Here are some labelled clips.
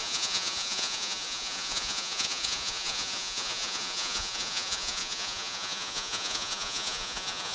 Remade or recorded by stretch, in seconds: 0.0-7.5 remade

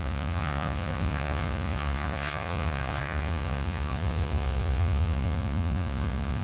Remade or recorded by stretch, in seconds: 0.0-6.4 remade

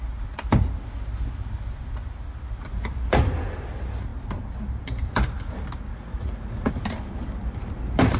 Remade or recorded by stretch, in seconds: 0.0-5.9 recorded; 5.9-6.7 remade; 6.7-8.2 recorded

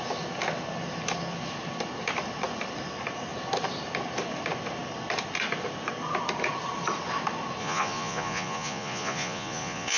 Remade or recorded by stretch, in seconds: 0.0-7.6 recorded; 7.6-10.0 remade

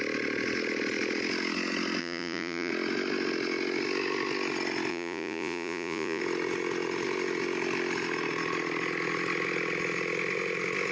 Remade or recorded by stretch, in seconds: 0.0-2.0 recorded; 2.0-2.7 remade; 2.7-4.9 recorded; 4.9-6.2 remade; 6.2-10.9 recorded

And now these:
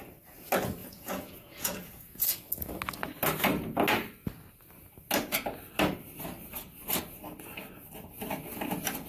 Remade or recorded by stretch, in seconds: 0.0-0.8 recorded; 0.8-2.5 remade; 2.5-9.1 recorded

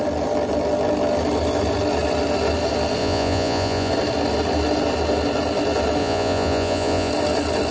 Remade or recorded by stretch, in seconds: 0.0-3.0 recorded; 3.0-3.9 remade; 3.9-6.0 recorded; 6.0-7.1 remade; 7.1-7.7 recorded